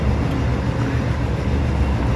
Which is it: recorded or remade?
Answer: recorded